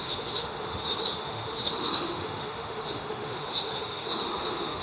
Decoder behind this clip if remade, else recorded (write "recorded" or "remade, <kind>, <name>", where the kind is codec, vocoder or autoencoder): remade, autoencoder, DAC-VAE